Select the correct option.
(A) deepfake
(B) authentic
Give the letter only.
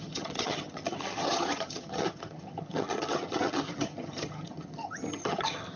A